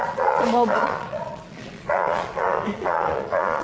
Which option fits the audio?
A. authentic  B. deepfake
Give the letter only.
B